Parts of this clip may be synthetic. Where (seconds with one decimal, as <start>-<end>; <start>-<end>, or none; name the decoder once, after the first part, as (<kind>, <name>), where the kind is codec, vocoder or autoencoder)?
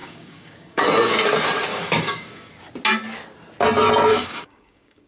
0.0-0.8 (codec, DAC); 1.7-2.5; 4.1-5.1